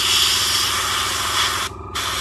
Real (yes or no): yes